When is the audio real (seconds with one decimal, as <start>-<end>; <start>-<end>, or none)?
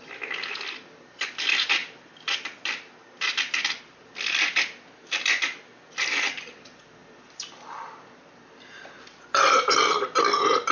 0.0-1.8; 2.9-7.0; 7.5-10.7